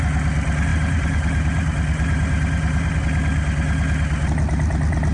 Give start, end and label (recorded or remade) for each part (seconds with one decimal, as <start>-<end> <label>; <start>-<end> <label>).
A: 0.0-0.7 recorded; 0.7-3.0 remade; 3.0-5.1 recorded